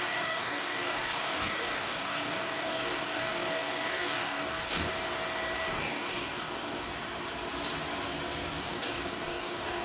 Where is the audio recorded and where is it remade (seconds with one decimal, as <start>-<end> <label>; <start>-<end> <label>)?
0.0-4.9 remade; 4.9-5.7 recorded; 5.7-6.9 remade; 6.9-8.6 recorded; 8.6-9.8 remade